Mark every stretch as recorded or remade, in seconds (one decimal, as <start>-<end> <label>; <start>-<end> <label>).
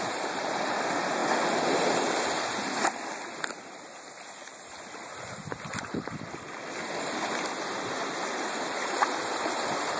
0.0-1.2 remade; 1.2-1.9 recorded; 1.9-10.0 remade